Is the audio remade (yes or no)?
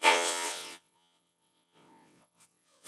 yes